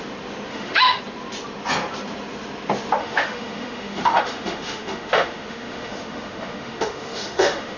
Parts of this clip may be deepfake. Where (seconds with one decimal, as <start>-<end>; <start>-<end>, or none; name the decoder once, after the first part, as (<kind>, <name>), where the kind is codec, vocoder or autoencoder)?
0.5-1.0 (autoencoder, DAC-VAE); 3.0-7.8